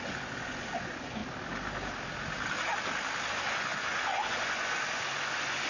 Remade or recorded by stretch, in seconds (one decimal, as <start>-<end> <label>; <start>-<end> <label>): 0.0-1.2 remade; 1.2-3.3 recorded; 3.3-5.7 remade